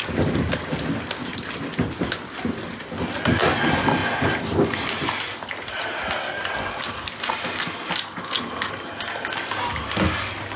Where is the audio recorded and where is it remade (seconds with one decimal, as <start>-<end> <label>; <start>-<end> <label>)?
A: 0.0-10.6 recorded